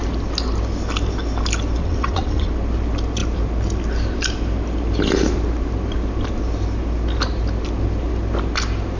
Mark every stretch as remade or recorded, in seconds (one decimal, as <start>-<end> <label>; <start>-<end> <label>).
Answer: 0.0-1.8 recorded; 1.8-2.5 remade; 2.5-9.0 recorded